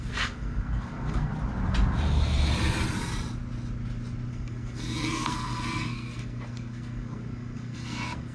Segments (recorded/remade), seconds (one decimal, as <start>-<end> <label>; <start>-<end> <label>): 0.0-1.3 remade; 1.3-4.3 recorded; 4.3-8.3 remade